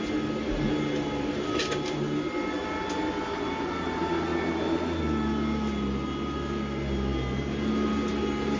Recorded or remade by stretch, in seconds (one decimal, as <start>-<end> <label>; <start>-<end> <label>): 0.0-8.6 recorded